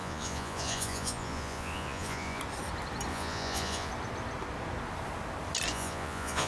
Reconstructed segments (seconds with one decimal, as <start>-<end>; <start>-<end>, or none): 0.0-2.4; 3.1-3.9; 5.7-6.5